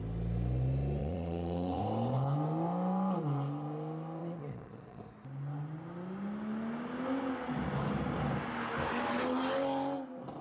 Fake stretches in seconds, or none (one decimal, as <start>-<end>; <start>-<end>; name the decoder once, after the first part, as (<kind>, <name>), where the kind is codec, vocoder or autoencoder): 1.0-1.8 (vocoder, Vocos); 4.2-5.0

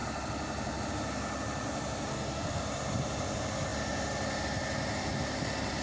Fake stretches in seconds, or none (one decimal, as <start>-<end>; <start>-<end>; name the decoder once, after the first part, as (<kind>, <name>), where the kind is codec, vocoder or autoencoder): 2.1-2.6 (codec, SNAC)

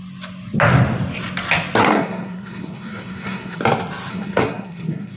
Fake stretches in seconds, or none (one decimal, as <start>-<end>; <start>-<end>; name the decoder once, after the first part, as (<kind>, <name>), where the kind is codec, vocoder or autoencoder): 1.8-3.6 (codec, SNAC); 4.1-5.2